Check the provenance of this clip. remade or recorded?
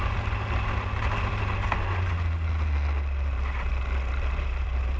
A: recorded